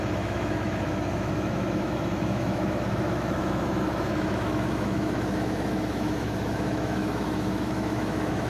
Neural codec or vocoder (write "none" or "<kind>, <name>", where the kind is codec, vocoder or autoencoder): autoencoder, DAC-VAE